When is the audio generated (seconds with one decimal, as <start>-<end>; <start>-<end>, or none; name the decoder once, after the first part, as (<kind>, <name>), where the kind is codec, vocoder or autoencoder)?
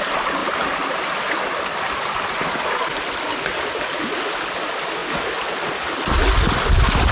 none